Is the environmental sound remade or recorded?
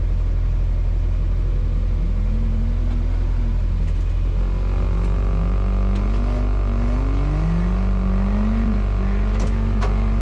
recorded